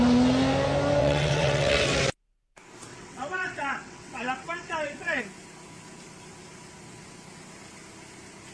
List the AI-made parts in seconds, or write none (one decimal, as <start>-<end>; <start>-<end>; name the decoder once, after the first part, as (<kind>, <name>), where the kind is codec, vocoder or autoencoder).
1.0-2.0 (vocoder, WaveNeXt); 2.9-5.2